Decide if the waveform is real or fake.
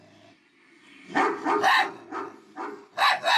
real